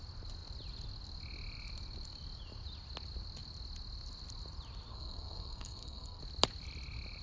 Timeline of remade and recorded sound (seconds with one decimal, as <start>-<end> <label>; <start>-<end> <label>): 0.0-4.9 recorded; 4.9-6.2 remade; 6.2-7.2 recorded